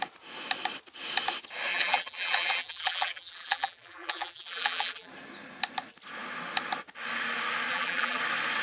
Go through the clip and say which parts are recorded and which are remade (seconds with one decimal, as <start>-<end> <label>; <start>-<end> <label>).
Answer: 0.0-1.7 recorded; 1.7-5.1 remade; 5.1-7.7 recorded; 7.7-8.2 remade; 8.2-8.6 recorded